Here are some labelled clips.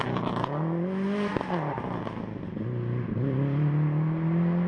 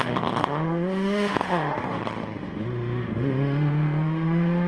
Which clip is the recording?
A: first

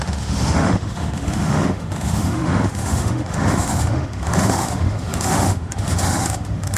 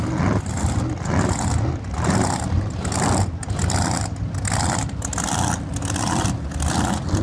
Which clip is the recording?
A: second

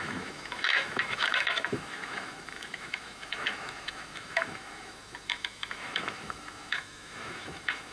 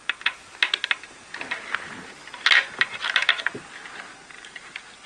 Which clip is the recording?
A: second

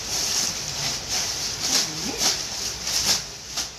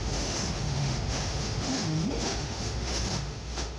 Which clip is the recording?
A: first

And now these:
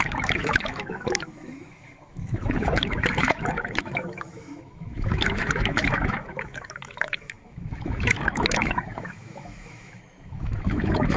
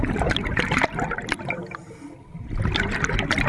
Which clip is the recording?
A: second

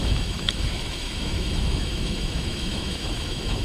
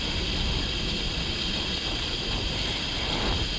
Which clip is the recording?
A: second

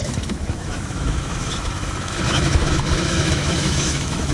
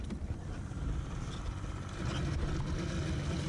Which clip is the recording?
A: second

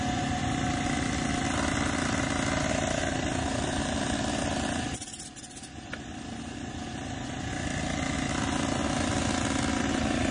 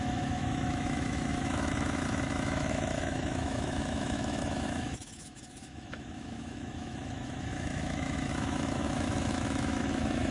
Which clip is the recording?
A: first